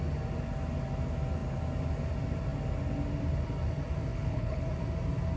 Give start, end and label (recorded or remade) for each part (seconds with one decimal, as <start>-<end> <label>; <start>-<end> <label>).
0.0-4.1 recorded; 4.1-4.7 remade; 4.7-5.4 recorded